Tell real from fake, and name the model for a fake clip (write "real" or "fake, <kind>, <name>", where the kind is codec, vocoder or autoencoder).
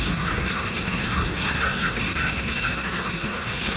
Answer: fake, codec, SNAC